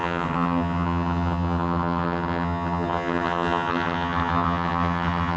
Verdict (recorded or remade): remade